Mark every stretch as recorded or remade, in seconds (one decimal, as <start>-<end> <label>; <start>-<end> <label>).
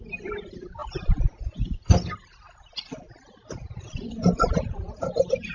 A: 0.0-5.5 recorded